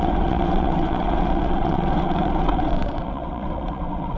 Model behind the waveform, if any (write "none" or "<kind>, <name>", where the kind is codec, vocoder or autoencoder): vocoder, WaveNeXt